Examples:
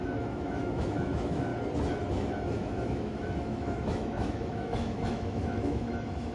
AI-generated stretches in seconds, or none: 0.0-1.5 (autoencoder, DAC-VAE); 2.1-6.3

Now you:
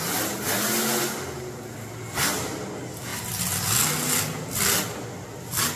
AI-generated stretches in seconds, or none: none

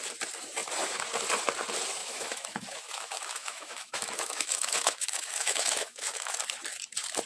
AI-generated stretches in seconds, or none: 2.0-6.4 (autoencoder, DAC-VAE)

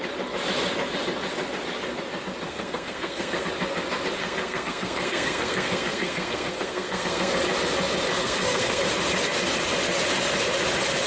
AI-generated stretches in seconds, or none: 2.5-3.4 (codec, SNAC); 4.2-7.3; 8.2-8.8

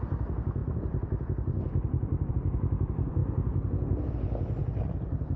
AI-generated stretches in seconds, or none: 0.0-3.2 (vocoder, BigVGAN v2); 4.1-5.4

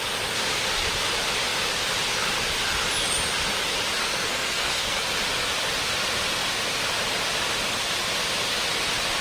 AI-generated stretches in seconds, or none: 4.0-5.0 (codec, SNAC)

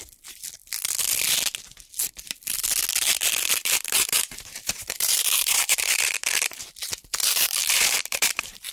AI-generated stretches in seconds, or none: 3.6-6.6 (vocoder, BigVGAN v2); 7.1-8.7